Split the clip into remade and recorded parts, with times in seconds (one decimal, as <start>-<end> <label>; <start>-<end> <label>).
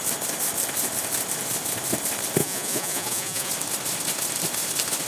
0.0-2.4 recorded; 2.4-3.5 remade; 3.5-5.1 recorded